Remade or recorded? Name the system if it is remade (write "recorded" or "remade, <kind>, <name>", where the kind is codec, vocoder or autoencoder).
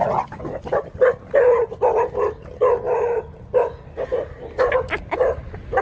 recorded